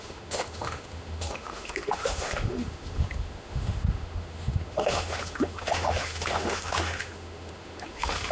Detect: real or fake fake